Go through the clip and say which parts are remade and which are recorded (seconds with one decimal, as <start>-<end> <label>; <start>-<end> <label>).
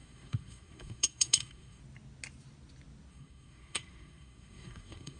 0.0-1.8 remade; 1.8-3.1 recorded; 3.1-5.2 remade